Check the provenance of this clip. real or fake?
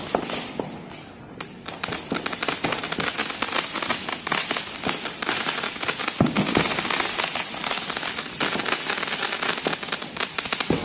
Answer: real